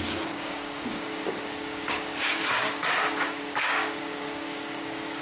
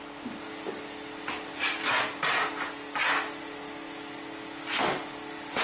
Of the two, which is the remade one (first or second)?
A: first